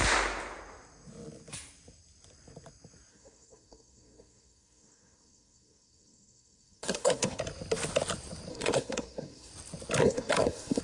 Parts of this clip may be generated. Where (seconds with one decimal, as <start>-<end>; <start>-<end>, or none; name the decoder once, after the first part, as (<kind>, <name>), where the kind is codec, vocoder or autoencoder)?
3.1-7.4 (codec, SNAC); 8.5-9.5; 10.0-10.8